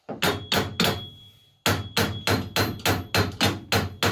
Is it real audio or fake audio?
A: real